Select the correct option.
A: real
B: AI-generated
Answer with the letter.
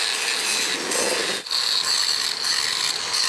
A